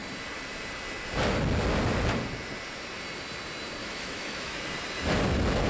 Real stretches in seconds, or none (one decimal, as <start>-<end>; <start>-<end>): 0.0-3.8; 4.6-5.7